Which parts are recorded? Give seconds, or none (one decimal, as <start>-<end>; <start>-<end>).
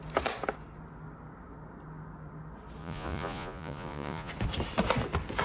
0.0-2.8; 4.3-5.4